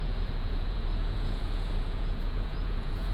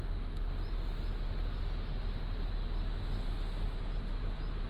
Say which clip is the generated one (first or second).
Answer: first